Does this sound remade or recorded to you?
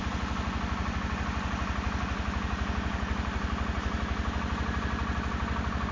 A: recorded